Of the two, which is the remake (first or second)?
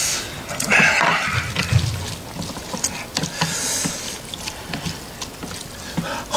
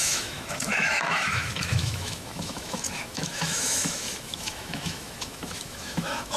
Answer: second